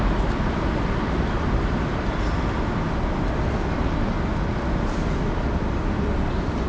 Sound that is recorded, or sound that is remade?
recorded